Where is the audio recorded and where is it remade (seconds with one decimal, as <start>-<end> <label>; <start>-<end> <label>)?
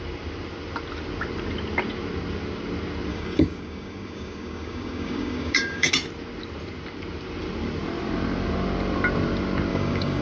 0.0-3.1 recorded; 3.1-5.9 remade; 5.9-9.7 recorded; 9.7-10.2 remade